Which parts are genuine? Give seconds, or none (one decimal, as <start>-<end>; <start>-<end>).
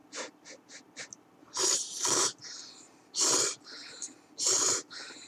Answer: 0.0-5.3